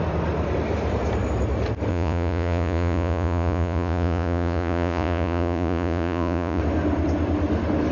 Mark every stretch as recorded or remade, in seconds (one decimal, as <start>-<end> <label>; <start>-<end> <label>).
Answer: 0.0-1.9 recorded; 1.9-6.6 remade; 6.6-7.9 recorded